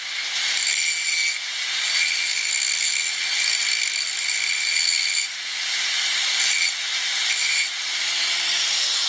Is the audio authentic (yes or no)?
yes